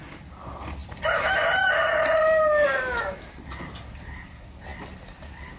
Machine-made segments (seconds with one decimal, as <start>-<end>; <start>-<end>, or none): none